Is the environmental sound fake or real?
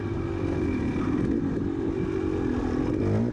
real